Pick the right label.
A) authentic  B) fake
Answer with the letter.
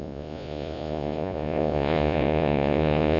B